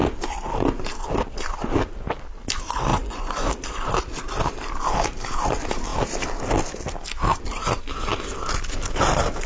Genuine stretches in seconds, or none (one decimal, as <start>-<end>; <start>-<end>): 0.0-2.9; 3.5-9.5